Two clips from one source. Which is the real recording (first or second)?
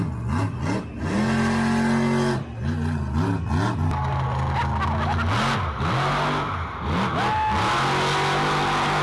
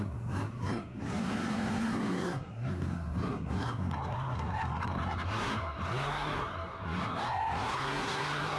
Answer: first